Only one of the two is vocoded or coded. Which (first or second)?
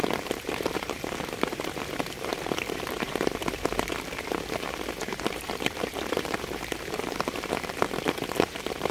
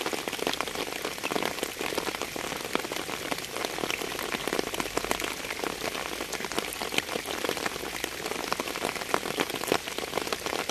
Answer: first